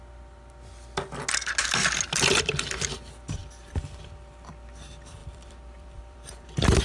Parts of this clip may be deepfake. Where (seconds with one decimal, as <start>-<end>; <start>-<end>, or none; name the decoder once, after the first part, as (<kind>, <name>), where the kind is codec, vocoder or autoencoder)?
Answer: 5.2-6.8 (vocoder, BigVGAN v2)